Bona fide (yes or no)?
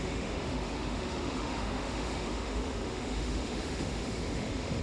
no